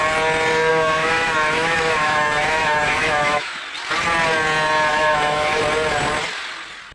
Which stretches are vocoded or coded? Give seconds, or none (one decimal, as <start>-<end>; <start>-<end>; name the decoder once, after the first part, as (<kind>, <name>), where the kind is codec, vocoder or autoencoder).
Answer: 0.7-3.6 (autoencoder, DAC-VAE); 4.9-5.6